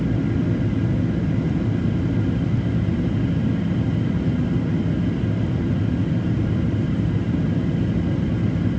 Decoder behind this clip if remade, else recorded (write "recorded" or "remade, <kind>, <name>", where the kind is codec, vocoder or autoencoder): recorded